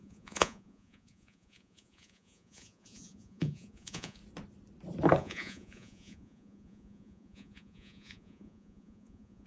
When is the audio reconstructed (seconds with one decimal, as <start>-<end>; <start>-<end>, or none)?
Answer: 0.0-4.2; 5.2-9.5